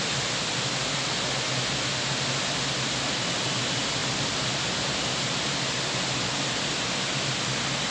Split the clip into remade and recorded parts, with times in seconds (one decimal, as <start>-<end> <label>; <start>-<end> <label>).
0.0-7.9 recorded